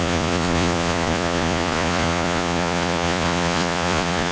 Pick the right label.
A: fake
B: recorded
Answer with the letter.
A